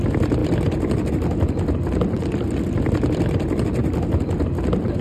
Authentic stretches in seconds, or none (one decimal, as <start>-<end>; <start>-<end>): 0.0-5.0

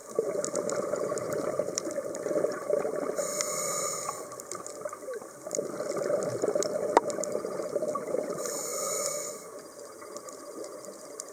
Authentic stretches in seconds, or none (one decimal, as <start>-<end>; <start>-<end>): 8.7-9.3